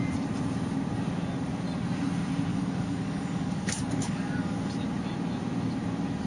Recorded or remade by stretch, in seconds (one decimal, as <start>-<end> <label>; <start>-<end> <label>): 0.0-2.5 recorded; 2.5-4.7 remade; 4.7-6.3 recorded